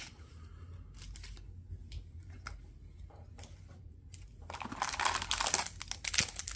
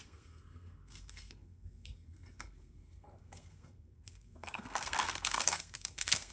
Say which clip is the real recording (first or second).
first